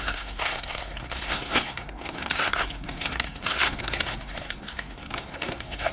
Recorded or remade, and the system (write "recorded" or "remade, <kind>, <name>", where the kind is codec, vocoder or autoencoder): remade, codec, SNAC